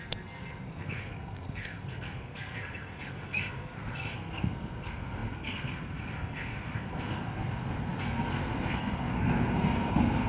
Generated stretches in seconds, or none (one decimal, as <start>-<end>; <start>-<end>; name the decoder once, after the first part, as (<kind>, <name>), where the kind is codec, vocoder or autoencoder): 0.0-10.3 (codec, SNAC)